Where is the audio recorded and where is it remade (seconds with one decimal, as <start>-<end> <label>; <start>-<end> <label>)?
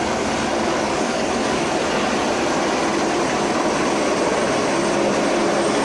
0.0-0.5 recorded; 0.5-1.8 remade; 1.8-5.8 recorded